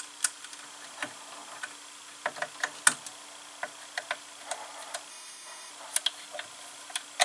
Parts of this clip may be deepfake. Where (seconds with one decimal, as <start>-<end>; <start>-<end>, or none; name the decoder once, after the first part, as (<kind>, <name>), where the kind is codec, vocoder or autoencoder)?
5.1-5.7 (autoencoder, DAC-VAE)